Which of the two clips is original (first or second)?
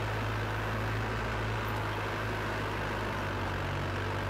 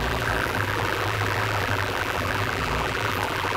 first